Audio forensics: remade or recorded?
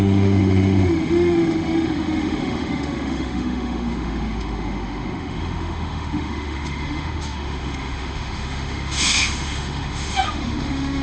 remade